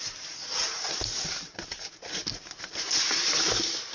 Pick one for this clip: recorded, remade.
recorded